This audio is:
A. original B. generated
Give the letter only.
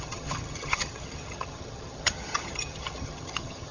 B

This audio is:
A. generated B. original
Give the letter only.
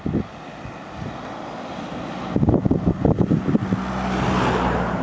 B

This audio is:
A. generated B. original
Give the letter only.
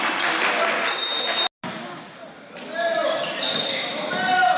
B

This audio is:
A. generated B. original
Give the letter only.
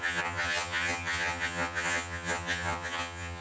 A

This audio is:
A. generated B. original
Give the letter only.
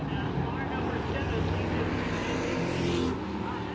B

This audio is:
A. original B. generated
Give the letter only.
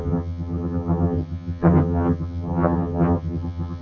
B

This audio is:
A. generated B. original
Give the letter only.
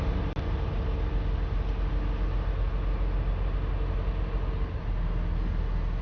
B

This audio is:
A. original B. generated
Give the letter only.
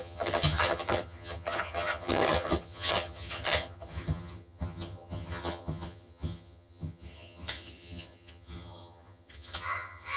B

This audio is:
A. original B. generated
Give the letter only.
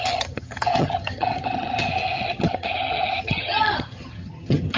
B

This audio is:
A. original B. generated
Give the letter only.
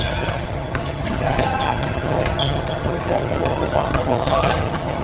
B